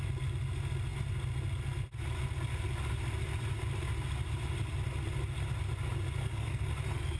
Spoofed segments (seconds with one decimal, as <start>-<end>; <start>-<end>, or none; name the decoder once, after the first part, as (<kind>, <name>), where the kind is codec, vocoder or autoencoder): 6.2-6.7 (codec, SNAC)